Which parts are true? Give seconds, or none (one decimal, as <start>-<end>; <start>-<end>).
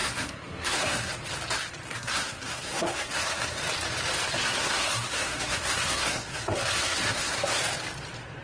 1.1-1.9; 3.6-4.4; 7.6-8.4